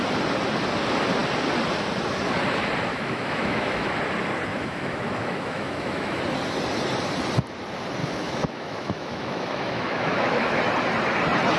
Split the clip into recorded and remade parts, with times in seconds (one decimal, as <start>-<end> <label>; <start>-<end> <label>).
0.0-2.9 recorded; 2.9-3.9 remade; 3.9-4.5 recorded; 4.5-6.2 remade; 6.2-8.0 recorded; 8.0-10.6 remade; 10.6-11.6 recorded